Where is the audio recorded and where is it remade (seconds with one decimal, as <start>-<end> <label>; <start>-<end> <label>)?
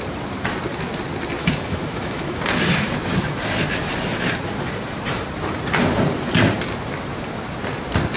0.0-1.4 recorded; 1.4-2.4 remade; 2.4-8.2 recorded